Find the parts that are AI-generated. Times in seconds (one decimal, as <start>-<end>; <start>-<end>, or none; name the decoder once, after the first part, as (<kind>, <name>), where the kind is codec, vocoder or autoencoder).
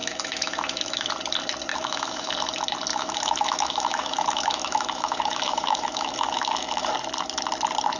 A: 0.0-1.1 (autoencoder, DAC-VAE); 1.7-2.3; 2.9-6.9